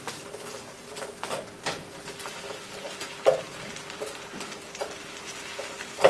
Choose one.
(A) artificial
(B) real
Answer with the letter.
B